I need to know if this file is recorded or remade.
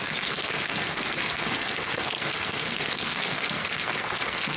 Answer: remade